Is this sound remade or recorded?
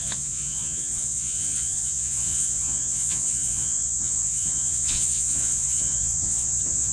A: remade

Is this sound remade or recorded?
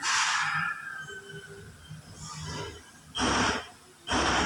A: recorded